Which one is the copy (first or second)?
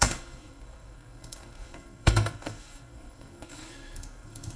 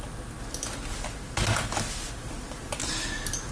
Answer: first